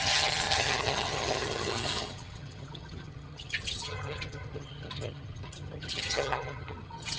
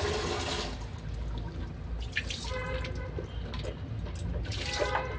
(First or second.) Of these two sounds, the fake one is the first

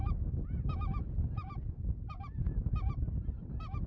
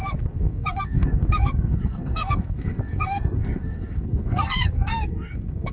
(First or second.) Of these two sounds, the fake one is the second